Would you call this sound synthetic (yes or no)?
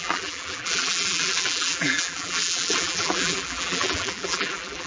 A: yes